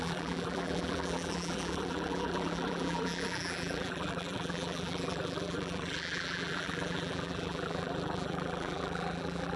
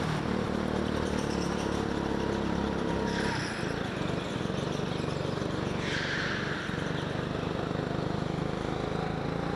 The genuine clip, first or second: second